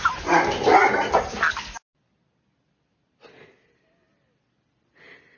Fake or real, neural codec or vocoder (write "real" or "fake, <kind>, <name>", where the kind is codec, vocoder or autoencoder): real